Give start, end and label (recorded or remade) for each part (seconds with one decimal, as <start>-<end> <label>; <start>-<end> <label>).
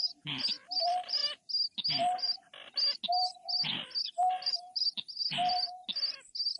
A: 0.0-1.2 remade; 1.2-4.0 recorded; 4.0-5.5 remade; 5.5-6.6 recorded